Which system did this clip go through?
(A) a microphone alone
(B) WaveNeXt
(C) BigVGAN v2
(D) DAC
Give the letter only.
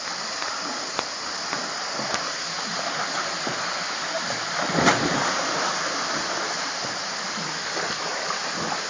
A